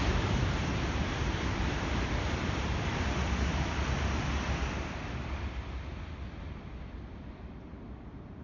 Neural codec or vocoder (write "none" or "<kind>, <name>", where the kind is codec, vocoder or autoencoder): vocoder, BigVGAN v2